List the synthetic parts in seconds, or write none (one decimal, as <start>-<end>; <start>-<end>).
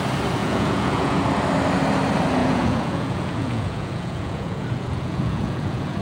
0.4-1.2; 2.4-6.0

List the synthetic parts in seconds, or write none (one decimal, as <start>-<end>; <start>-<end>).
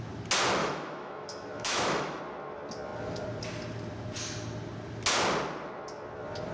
0.6-2.2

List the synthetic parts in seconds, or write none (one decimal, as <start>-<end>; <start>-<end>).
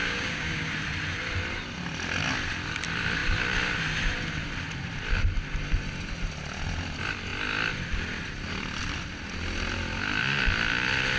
0.0-0.7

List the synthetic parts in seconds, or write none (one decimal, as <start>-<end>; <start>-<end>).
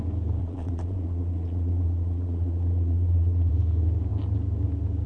0.4-3.5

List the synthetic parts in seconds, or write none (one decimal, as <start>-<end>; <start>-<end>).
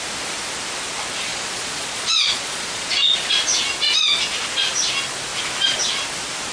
1.3-3.3